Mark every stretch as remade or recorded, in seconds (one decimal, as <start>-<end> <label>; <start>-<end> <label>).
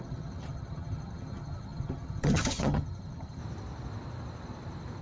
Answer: 0.0-3.4 remade; 3.4-5.0 recorded